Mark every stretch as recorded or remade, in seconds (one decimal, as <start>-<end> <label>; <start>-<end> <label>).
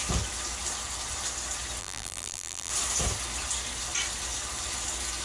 0.0-1.8 recorded; 1.8-2.7 remade; 2.7-5.2 recorded